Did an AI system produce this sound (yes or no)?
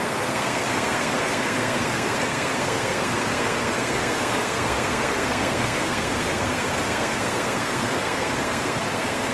yes